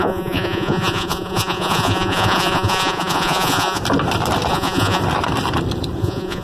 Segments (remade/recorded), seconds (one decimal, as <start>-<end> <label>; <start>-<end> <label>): 0.0-3.8 remade; 3.8-4.5 recorded; 4.5-5.0 remade; 5.0-6.0 recorded; 6.0-6.4 remade